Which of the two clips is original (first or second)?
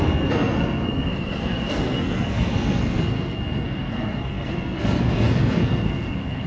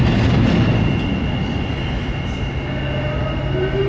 second